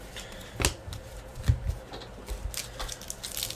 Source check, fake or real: real